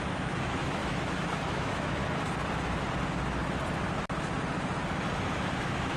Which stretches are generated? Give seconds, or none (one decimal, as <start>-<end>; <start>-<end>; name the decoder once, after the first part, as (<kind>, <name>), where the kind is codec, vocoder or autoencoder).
0.0-2.0 (autoencoder, DAC-VAE); 5.6-6.0